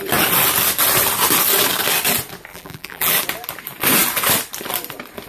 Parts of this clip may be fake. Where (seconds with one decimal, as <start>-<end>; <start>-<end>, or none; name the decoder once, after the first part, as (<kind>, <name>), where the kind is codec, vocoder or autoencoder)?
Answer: 2.5-3.1 (vocoder, BigVGAN v2)